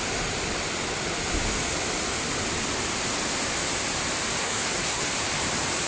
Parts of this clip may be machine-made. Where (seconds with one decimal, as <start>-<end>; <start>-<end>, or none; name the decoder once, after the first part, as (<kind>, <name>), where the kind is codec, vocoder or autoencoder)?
4.4-5.0 (codec, SNAC)